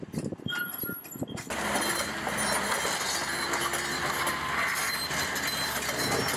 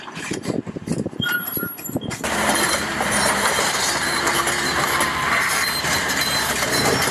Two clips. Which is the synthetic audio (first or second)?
second